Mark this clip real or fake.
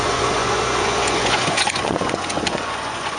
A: fake